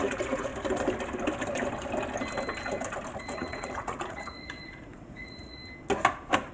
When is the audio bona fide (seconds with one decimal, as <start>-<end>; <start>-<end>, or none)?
0.5-3.2; 5.6-6.5